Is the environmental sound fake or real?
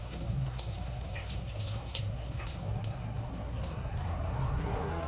fake